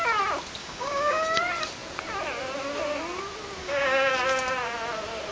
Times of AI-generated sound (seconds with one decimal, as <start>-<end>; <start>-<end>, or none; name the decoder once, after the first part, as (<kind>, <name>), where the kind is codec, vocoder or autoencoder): 0.6-1.4 (codec, DAC); 3.6-4.1